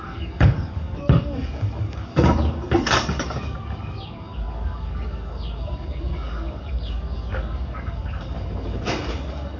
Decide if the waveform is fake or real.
fake